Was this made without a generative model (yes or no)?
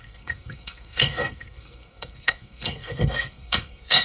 no